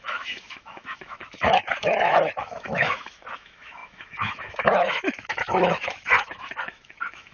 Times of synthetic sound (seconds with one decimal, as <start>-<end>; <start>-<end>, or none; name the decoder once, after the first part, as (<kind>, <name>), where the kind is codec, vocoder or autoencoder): 0.0-7.3 (autoencoder, DAC-VAE)